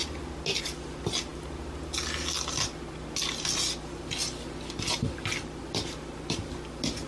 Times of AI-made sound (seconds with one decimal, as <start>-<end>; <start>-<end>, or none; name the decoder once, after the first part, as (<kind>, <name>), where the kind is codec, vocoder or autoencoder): none